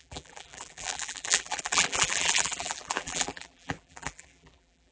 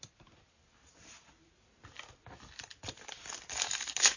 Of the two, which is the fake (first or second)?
first